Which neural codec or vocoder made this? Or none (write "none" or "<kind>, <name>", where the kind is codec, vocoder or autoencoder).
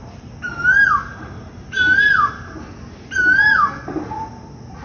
none